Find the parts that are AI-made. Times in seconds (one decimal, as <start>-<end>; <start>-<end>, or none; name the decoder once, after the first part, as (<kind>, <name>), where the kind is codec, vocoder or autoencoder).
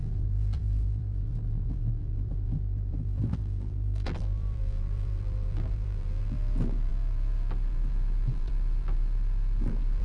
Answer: 0.0-10.0 (vocoder, BigVGAN v2)